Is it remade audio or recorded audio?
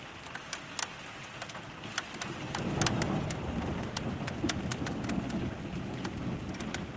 recorded